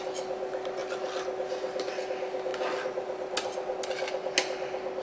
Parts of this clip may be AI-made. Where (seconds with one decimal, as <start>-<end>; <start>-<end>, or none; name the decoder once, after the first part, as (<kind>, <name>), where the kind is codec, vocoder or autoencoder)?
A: none